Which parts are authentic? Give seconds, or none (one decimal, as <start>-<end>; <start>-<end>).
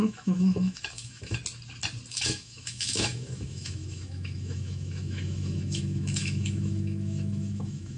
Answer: 1.4-2.1